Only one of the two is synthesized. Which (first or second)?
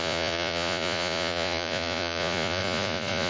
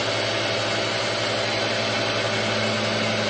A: first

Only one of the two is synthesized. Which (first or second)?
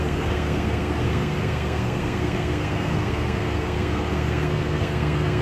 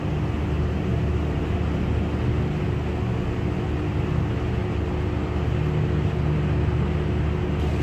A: first